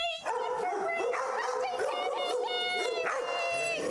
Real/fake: real